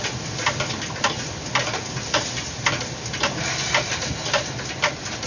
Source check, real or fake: real